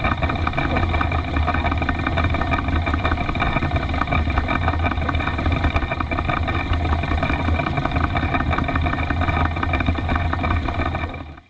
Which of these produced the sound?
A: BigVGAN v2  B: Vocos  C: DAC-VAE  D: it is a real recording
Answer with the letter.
D